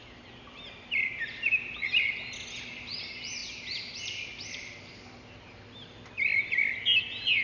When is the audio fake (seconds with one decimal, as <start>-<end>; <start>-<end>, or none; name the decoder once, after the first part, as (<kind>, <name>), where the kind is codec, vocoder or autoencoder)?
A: 3.4-4.8 (vocoder, BigVGAN v2)